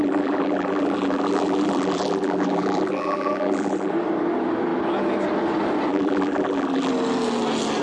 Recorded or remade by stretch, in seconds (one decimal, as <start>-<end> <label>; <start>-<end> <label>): 0.0-3.9 remade; 3.9-5.9 recorded; 5.9-6.9 remade; 6.9-7.8 recorded